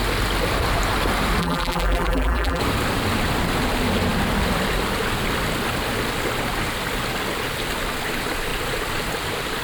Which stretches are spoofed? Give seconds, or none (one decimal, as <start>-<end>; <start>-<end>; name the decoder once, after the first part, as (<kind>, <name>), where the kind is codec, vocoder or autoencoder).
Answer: 1.4-2.6 (vocoder, BigVGAN v2)